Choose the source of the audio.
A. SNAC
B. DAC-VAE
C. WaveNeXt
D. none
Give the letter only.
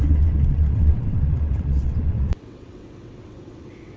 C